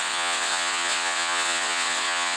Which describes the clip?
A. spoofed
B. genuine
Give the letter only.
A